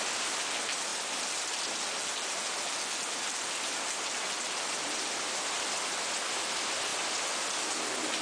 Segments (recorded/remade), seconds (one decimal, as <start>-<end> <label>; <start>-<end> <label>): 0.0-0.9 recorded; 0.9-2.0 remade; 2.0-6.9 recorded; 6.9-7.7 remade; 7.7-8.2 recorded